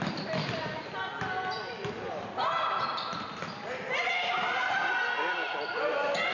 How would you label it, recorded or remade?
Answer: recorded